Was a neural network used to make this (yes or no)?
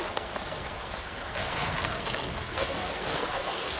yes